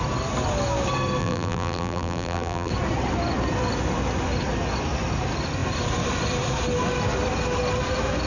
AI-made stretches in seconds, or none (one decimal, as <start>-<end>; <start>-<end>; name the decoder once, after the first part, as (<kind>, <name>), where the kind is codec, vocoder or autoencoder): 1.2-2.7 (vocoder, BigVGAN v2)